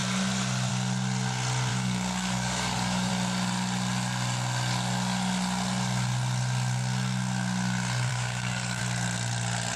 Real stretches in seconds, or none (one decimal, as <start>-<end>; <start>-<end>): 0.0-1.7; 3.1-8.1; 8.8-9.8